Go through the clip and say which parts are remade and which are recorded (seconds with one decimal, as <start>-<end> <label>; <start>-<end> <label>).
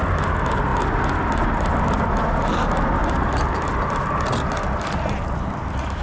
0.0-6.0 recorded